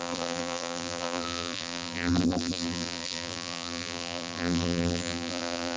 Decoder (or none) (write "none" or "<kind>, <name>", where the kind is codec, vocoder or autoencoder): vocoder, BigVGAN v2